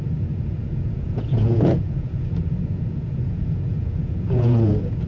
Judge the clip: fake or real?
fake